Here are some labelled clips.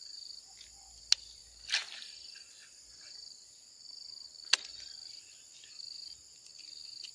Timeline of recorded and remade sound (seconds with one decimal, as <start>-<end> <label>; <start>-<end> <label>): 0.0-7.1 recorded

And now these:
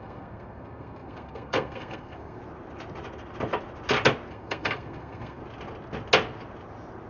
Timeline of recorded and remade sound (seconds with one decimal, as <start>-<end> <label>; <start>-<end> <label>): 0.0-2.4 remade; 2.4-4.3 recorded; 4.3-5.4 remade; 5.4-7.1 recorded

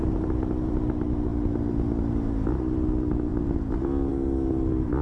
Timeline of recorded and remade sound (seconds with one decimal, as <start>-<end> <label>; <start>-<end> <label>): 0.0-5.0 recorded